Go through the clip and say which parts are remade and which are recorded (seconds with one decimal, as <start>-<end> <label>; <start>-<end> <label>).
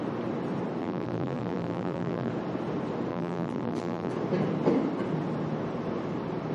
0.0-0.8 recorded; 0.8-2.3 remade; 2.3-3.1 recorded; 3.1-4.1 remade; 4.1-6.5 recorded